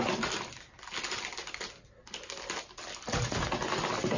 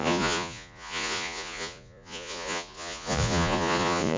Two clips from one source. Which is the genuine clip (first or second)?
first